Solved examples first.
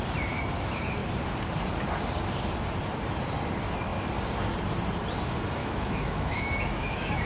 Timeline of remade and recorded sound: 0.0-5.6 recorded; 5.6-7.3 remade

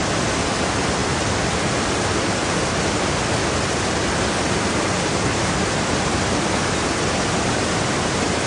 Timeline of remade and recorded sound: 0.0-8.5 recorded